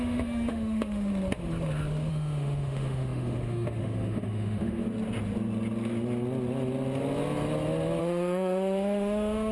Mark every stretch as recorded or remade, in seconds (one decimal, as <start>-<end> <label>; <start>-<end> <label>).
0.0-1.1 remade; 1.1-2.1 recorded; 2.1-4.8 remade; 4.8-8.0 recorded; 8.0-9.5 remade